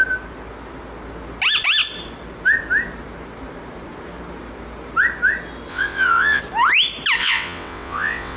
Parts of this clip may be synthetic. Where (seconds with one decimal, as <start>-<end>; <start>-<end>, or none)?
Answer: 5.7-6.4; 7.2-8.4